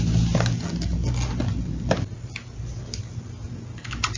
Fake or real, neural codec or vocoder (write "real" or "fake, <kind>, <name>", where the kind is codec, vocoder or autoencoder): real